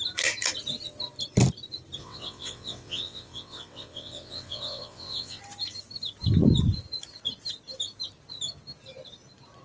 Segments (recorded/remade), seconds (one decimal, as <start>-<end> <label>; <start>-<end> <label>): 0.0-2.0 recorded; 2.0-5.4 remade; 5.4-9.6 recorded